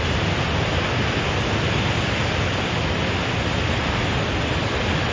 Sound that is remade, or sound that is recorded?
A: recorded